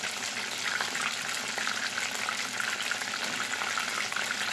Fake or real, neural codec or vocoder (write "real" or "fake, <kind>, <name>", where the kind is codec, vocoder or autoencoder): real